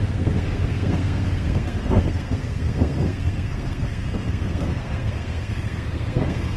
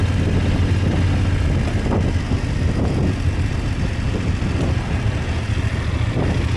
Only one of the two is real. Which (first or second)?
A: second